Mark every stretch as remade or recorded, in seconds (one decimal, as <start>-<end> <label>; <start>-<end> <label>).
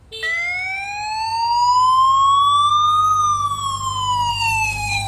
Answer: 0.0-4.3 recorded; 4.3-5.1 remade